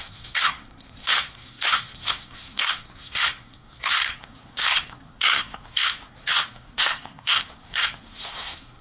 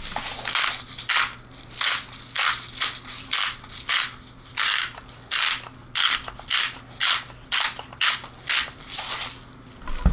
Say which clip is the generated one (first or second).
first